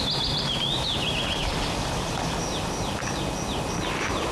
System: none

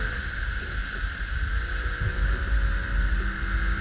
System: none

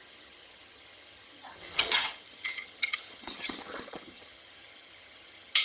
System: vocoder, HiFi-GAN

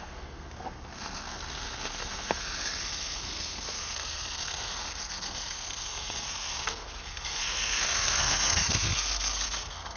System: codec, SNAC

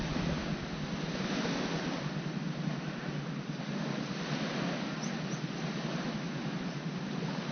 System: none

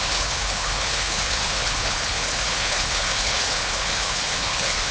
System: codec, HILCodec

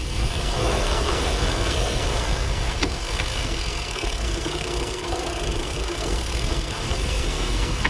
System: codec, SNAC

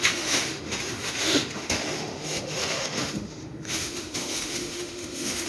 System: autoencoder, DAC-VAE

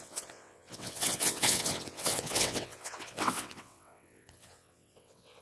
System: vocoder, WaveNeXt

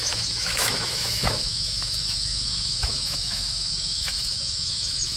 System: autoencoder, DAC-VAE